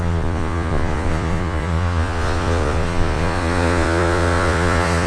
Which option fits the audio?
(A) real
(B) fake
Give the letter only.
B